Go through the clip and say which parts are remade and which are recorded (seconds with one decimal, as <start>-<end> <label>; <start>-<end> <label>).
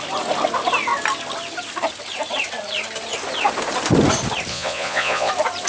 0.0-4.5 recorded; 4.5-5.3 remade; 5.3-5.7 recorded